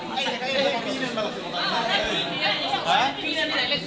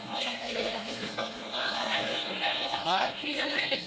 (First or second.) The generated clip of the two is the second